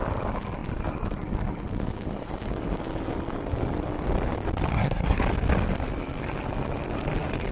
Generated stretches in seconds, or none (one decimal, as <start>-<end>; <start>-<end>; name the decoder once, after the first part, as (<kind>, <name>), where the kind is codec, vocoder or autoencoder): 4.7-5.2 (codec, SNAC)